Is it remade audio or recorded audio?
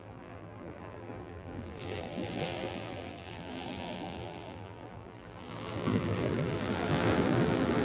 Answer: remade